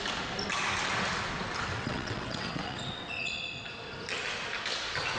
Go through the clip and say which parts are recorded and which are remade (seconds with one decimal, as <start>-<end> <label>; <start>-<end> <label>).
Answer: 0.0-1.7 recorded; 1.7-3.3 remade; 3.3-5.2 recorded